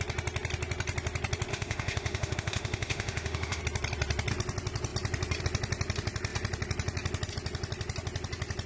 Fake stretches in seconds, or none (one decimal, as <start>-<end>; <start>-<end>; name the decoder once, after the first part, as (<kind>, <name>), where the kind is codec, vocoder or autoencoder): 1.5-3.6 (autoencoder, DAC-VAE)